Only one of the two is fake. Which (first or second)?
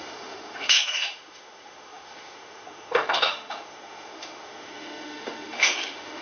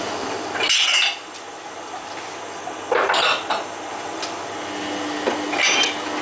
first